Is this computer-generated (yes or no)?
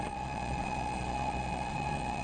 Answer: yes